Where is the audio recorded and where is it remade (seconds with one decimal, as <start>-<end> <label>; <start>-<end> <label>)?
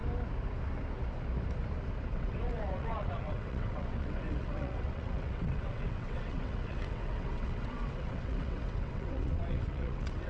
0.0-2.1 recorded; 2.1-10.3 remade